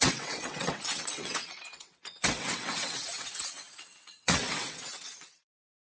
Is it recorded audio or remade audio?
remade